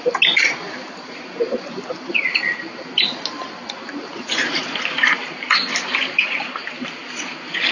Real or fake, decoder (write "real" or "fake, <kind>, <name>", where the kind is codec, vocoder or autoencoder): real